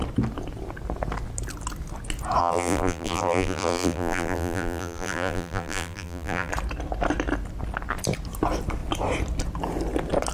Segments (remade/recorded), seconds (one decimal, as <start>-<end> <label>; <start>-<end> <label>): 0.0-2.4 recorded; 2.4-6.5 remade; 6.5-10.3 recorded